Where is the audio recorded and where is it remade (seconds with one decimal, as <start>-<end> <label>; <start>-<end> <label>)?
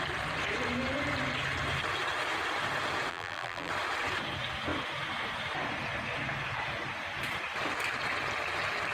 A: 0.0-3.1 recorded; 3.1-3.7 remade; 3.7-8.9 recorded